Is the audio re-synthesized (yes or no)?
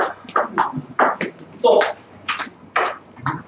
no